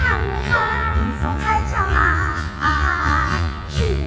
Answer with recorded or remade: remade